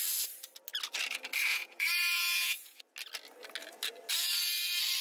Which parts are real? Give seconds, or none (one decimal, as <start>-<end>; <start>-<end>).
0.0-1.5; 2.8-5.0